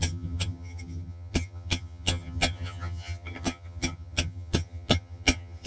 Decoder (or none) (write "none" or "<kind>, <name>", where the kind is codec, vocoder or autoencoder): vocoder, HiFi-GAN